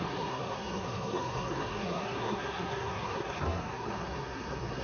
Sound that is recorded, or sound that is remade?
remade